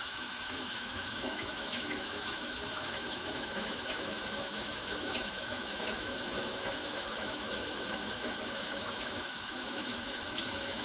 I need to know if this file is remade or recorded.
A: remade